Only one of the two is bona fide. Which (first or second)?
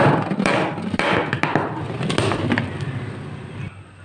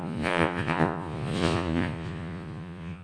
first